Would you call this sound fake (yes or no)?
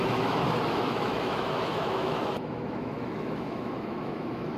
yes